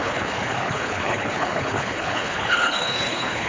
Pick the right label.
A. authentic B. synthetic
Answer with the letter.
B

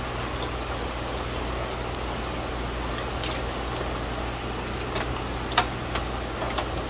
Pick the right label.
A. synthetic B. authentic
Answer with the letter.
B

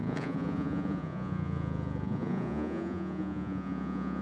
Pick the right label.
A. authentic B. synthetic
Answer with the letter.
B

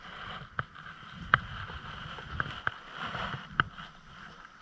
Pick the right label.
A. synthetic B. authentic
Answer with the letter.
B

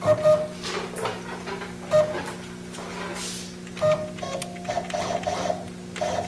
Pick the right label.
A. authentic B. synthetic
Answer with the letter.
A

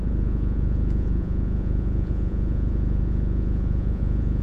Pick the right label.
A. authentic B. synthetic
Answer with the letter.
B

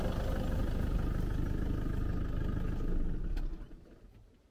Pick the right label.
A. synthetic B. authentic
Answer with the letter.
B